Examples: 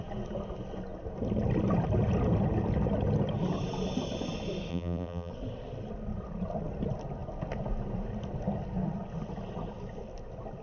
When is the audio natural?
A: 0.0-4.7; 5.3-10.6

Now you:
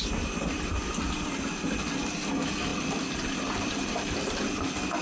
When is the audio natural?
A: 0.0-5.0

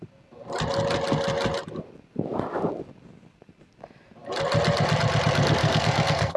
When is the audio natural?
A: 0.0-5.6

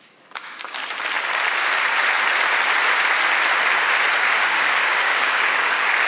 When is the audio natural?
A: 0.8-4.2

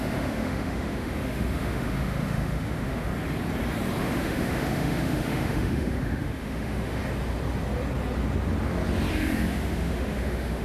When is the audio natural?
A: 3.1-4.0; 7.0-9.1

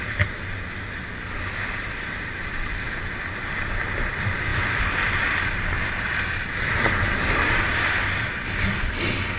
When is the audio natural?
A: 0.0-9.4

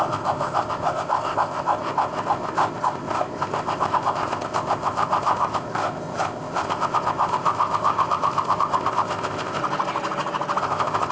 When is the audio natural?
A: 9.6-10.6

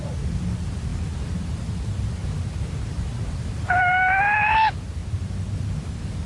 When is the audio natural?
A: 0.0-0.9; 1.5-2.2; 4.2-6.3